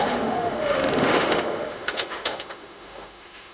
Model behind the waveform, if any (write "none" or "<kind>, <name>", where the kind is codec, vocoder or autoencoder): autoencoder, DAC-VAE